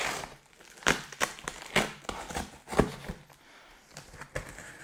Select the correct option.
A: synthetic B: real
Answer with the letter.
B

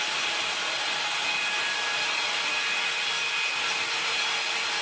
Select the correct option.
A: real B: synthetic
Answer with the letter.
A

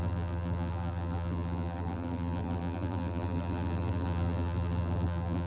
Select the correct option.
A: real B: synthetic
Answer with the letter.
B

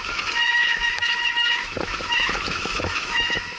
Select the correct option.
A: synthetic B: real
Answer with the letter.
A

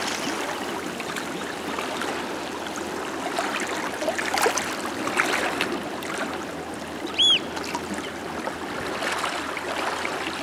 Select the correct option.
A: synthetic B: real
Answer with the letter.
B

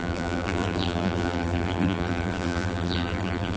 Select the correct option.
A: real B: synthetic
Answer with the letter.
B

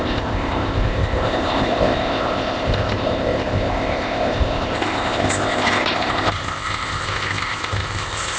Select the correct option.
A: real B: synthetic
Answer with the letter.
B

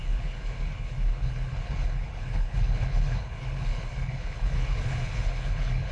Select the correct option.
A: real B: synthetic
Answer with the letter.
B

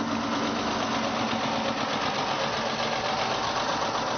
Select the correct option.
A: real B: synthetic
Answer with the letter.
A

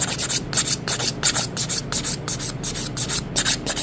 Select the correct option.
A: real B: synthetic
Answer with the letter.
A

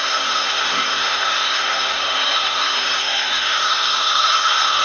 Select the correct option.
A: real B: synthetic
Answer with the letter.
B